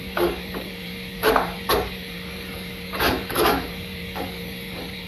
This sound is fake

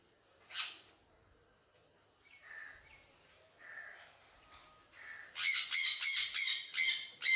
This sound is real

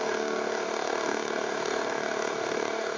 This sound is fake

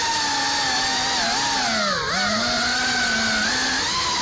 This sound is real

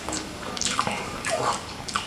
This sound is fake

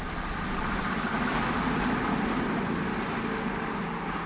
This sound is real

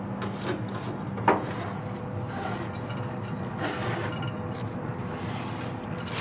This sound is real